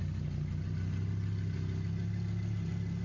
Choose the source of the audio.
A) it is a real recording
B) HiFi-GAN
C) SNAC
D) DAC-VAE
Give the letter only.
A